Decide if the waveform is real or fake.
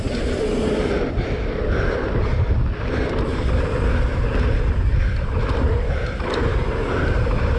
real